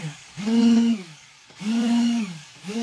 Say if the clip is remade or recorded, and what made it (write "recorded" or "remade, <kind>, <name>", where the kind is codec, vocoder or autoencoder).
remade, codec, DAC